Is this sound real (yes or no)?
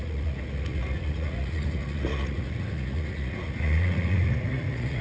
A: no